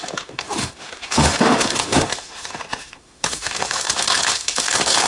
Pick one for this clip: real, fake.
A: fake